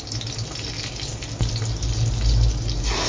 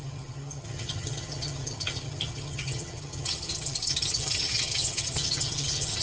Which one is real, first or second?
first